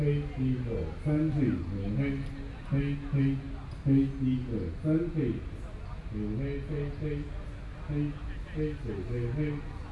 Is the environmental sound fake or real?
real